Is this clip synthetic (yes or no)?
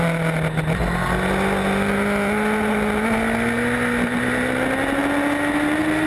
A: no